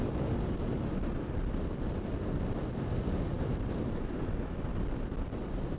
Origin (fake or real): real